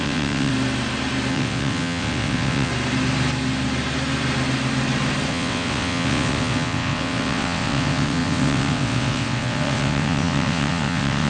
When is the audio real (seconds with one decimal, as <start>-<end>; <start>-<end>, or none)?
0.5-1.3; 2.7-5.3